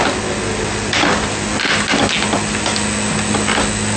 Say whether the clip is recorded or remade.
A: recorded